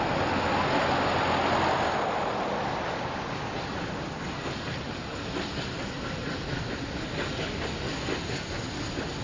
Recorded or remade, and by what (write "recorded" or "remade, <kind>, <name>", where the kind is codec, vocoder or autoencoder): recorded